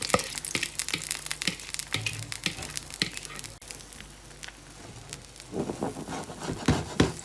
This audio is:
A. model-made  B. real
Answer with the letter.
B